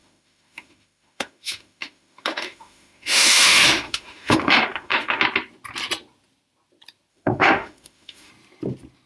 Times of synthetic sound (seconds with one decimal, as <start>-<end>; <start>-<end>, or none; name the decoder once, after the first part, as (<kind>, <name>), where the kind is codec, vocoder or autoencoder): 0.0-5.2 (autoencoder, DAC-VAE); 7.1-8.3